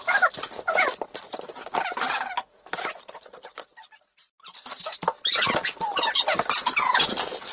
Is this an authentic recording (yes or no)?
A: yes